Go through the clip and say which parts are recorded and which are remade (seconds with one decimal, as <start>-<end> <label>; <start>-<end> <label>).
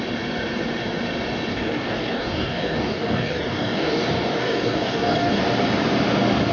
0.0-1.5 recorded; 1.5-5.4 remade; 5.4-6.5 recorded